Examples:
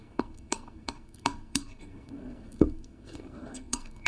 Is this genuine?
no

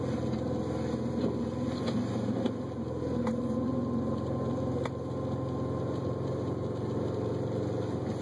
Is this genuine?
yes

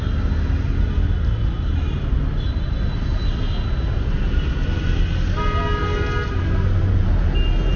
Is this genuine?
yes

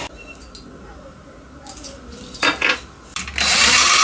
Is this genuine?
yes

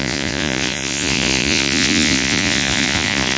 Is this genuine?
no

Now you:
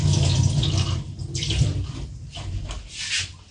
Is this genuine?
yes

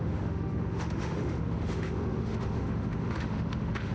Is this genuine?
no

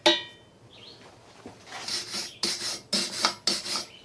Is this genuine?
yes